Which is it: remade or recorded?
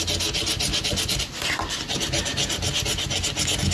recorded